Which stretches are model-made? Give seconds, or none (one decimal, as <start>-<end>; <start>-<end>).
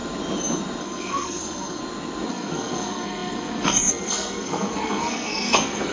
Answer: 0.8-1.8; 2.3-5.9